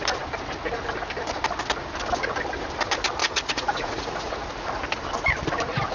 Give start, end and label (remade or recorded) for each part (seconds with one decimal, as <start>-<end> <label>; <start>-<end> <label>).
0.0-3.2 recorded; 3.2-4.3 remade; 4.3-5.9 recorded